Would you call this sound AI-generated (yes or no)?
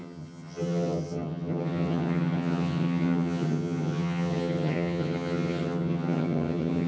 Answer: yes